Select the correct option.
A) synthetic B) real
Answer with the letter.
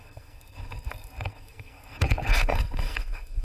A